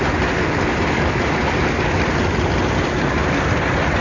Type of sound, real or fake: real